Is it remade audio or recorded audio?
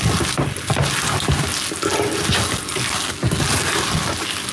recorded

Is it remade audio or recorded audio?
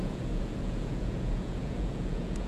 remade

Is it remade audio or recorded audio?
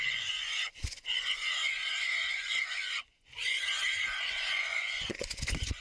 remade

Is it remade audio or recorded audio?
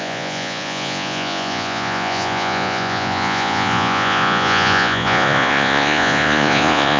remade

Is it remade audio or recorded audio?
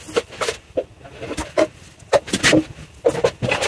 recorded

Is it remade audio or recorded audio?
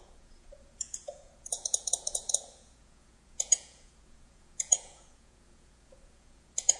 remade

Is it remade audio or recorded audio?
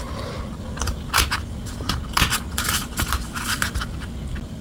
recorded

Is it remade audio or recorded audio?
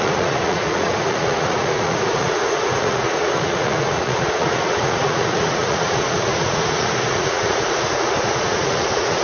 remade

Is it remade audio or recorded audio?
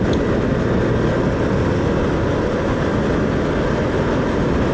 recorded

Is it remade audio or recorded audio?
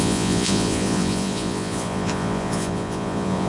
remade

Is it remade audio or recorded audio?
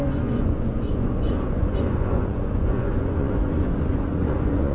remade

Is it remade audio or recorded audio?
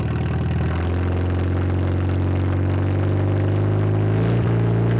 recorded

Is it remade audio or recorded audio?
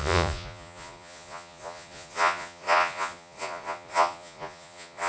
remade